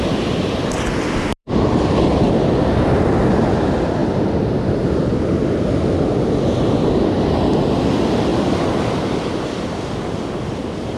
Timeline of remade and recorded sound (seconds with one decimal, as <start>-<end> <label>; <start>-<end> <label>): 0.0-1.4 recorded; 1.4-2.0 remade; 2.0-11.0 recorded